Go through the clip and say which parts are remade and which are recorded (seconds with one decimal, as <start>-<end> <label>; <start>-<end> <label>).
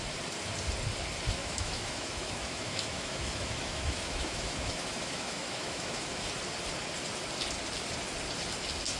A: 0.0-1.4 recorded; 1.4-6.3 remade; 6.3-9.0 recorded